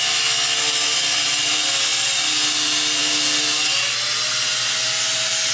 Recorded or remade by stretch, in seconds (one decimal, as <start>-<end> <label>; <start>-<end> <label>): 0.0-5.5 recorded